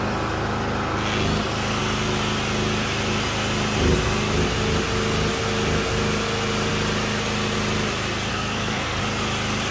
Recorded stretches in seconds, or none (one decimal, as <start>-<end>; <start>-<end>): 0.0-8.3; 9.0-9.7